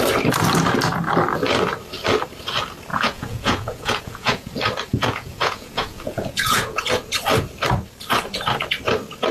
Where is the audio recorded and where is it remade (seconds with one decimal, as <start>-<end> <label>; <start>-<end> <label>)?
0.0-2.9 recorded; 2.9-4.5 remade; 4.5-4.9 recorded; 4.9-6.8 remade; 6.8-9.3 recorded